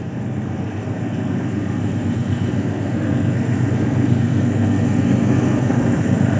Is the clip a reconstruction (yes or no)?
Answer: yes